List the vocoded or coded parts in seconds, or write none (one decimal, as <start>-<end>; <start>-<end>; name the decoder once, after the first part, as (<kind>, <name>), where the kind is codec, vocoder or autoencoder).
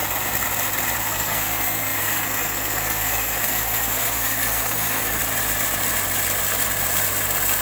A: 1.0-5.2 (codec, SNAC)